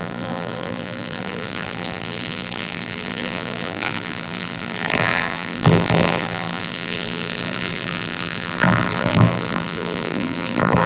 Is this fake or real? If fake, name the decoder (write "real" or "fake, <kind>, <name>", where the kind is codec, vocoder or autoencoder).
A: fake, vocoder, BigVGAN v2